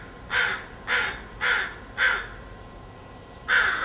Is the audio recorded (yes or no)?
yes